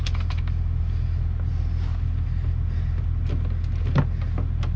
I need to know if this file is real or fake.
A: real